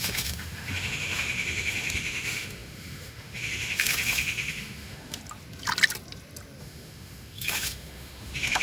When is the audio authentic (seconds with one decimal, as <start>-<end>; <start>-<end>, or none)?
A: 5.2-6.6

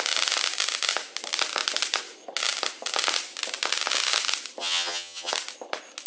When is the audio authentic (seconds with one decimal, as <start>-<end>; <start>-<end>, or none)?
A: 0.0-4.6; 5.3-6.1

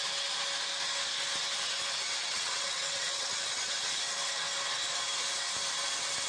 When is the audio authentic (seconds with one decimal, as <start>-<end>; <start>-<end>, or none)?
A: 0.0-2.2; 3.9-6.3